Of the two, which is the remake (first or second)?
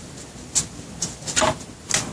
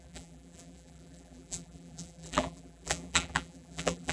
second